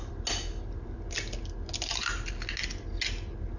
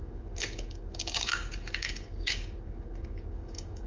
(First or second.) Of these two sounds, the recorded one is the first